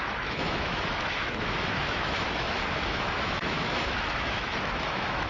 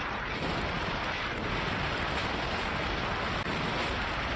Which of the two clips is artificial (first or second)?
first